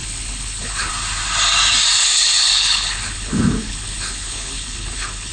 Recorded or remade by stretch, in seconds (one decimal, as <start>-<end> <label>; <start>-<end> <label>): 0.0-0.9 remade; 0.9-2.0 recorded; 2.0-5.3 remade